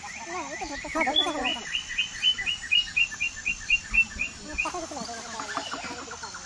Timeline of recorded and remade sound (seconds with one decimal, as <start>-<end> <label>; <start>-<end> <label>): 0.0-6.5 recorded